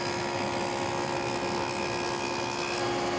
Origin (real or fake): real